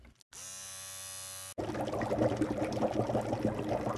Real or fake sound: real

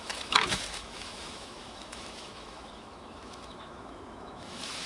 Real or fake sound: fake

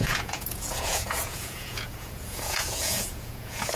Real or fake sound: fake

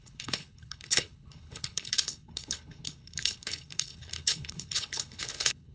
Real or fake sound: fake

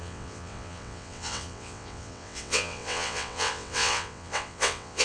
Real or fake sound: fake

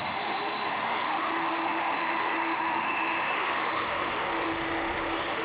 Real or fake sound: fake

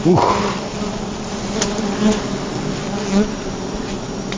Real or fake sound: real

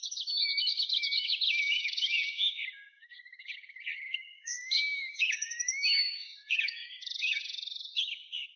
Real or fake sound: fake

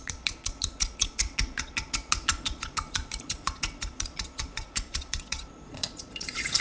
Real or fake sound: fake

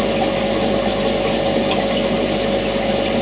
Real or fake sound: real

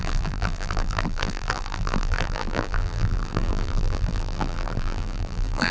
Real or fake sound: fake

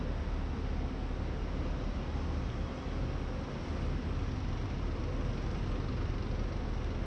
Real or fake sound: real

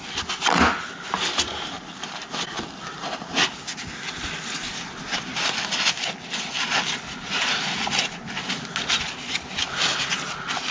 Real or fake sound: real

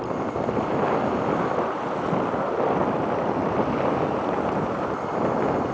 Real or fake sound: real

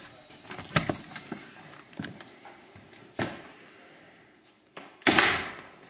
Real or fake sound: fake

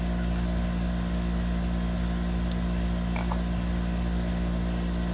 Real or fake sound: real